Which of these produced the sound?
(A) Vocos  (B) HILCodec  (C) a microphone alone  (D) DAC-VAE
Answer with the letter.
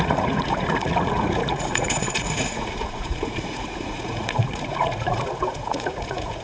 A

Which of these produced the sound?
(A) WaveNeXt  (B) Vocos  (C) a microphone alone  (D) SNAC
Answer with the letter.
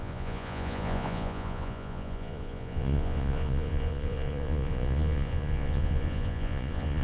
B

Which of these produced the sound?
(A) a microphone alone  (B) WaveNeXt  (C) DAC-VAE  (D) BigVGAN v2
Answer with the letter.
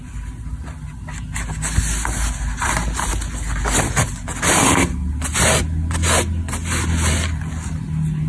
A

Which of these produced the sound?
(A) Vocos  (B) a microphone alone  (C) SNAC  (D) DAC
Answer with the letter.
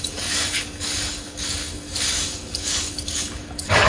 D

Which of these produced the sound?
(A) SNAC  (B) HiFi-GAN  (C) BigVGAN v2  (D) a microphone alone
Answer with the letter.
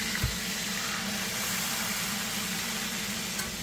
C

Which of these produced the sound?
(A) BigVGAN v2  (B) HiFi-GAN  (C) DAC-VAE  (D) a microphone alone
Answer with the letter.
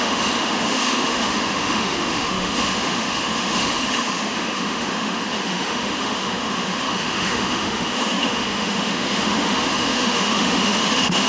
C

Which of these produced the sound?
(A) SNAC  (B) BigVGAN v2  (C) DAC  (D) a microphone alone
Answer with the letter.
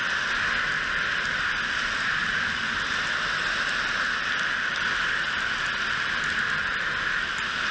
D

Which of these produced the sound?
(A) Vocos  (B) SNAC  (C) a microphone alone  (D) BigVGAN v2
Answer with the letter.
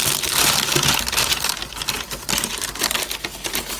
C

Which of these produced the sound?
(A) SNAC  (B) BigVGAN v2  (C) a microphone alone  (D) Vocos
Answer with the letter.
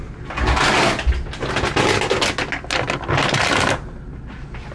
C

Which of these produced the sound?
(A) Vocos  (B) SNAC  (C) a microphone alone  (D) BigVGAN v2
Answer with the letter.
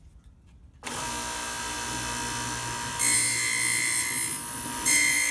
C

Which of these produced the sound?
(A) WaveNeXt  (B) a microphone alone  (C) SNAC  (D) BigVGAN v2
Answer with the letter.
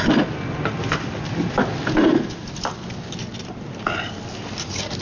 B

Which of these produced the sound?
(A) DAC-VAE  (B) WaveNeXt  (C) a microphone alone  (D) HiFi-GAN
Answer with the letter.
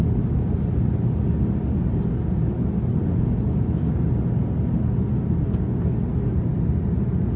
C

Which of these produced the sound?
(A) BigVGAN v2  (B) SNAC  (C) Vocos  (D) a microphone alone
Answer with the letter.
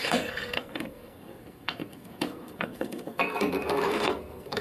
B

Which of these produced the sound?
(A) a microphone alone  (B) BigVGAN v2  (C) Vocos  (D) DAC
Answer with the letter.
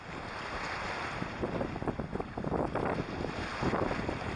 A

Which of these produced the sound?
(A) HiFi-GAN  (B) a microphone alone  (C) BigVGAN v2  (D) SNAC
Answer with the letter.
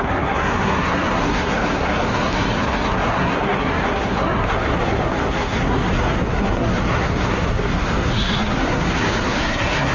D